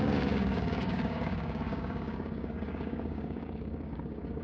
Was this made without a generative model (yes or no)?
no